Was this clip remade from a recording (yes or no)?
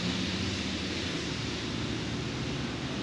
no